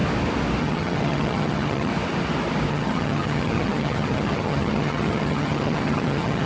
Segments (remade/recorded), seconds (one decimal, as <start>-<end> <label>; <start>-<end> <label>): 0.0-0.6 recorded; 0.6-1.9 remade; 1.9-2.7 recorded; 2.7-6.5 remade